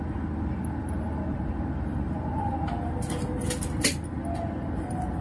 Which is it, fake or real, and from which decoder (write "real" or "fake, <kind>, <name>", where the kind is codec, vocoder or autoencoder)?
real